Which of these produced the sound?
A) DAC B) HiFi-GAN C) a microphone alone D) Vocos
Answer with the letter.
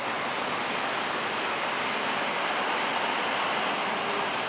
C